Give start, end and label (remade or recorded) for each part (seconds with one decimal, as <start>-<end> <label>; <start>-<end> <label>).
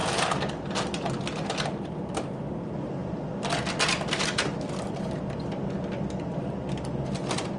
0.0-7.6 recorded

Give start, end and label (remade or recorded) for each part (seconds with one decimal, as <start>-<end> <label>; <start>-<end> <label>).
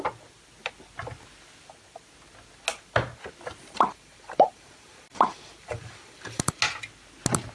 0.0-3.6 recorded; 3.6-6.6 remade; 6.6-7.5 recorded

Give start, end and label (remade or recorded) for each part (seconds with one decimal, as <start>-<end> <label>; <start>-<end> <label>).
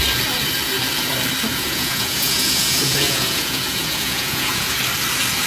0.0-1.5 recorded; 1.5-4.8 remade; 4.8-5.5 recorded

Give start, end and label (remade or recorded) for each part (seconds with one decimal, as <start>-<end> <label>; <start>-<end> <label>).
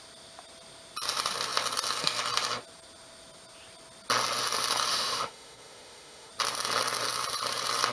0.0-4.9 recorded; 4.9-6.3 remade; 6.3-7.9 recorded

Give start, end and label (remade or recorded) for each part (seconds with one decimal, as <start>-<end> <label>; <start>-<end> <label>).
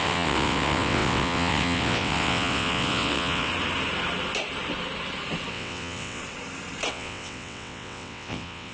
0.0-3.5 remade; 3.5-5.5 recorded; 5.5-6.2 remade; 6.2-6.9 recorded; 6.9-8.7 remade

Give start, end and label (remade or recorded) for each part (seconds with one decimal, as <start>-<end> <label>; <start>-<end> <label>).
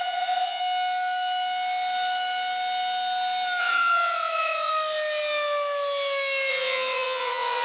0.0-0.6 remade; 0.6-3.6 recorded; 3.6-4.7 remade; 4.7-6.5 recorded; 6.5-7.6 remade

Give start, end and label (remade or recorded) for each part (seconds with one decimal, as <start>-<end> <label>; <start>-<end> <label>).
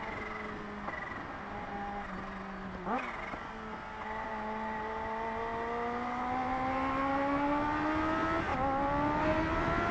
0.0-9.9 recorded